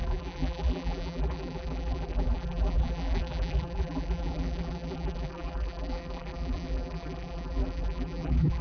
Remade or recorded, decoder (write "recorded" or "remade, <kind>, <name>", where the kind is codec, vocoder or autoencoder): remade, vocoder, BigVGAN v2